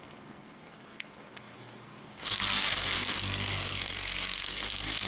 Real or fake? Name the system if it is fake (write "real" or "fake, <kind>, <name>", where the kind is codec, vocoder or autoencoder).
fake, codec, SNAC